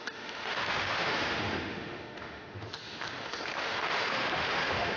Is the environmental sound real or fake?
fake